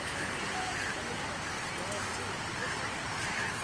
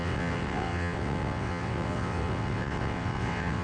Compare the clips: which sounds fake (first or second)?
second